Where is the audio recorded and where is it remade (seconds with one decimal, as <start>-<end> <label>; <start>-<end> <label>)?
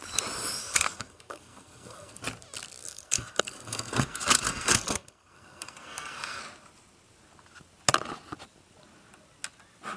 0.0-0.6 recorded; 0.6-2.2 remade; 2.2-2.8 recorded; 2.8-6.4 remade; 6.4-10.0 recorded